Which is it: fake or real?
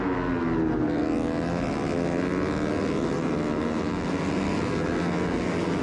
real